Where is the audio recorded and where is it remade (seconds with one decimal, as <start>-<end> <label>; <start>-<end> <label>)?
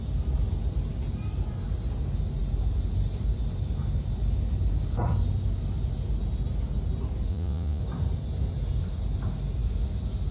0.0-7.3 recorded; 7.3-7.8 remade; 7.8-10.3 recorded